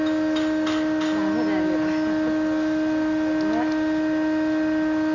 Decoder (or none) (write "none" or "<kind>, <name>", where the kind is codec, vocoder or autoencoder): none